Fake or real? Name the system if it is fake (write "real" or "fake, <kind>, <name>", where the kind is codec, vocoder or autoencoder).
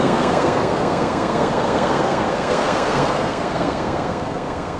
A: fake, codec, SNAC